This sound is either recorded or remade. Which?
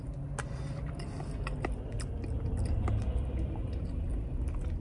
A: recorded